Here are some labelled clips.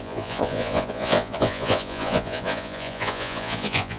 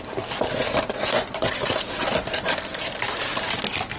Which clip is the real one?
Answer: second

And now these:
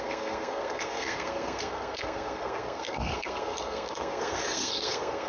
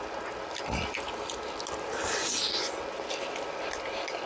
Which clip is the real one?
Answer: second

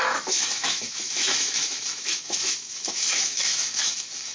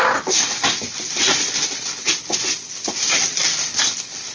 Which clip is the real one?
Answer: second